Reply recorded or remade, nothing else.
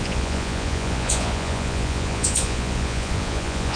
remade